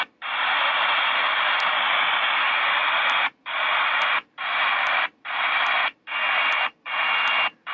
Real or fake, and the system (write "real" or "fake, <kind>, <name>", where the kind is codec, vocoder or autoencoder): real